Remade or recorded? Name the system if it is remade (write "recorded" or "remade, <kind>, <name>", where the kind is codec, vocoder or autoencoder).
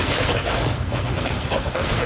remade, codec, SNAC